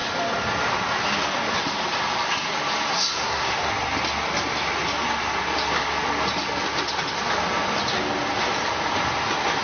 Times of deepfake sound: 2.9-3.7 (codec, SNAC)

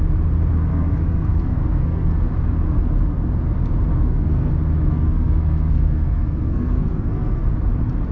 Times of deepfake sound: 0.7-2.3 (codec, SNAC); 3.9-4.5; 4.9-7.4

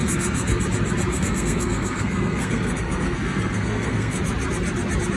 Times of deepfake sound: 0.0-0.6 (codec, SNAC); 1.1-4.2

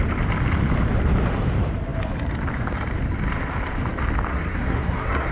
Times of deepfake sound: 4.3-5.3 (codec, SNAC)